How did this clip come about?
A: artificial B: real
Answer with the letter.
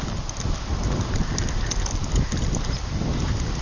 B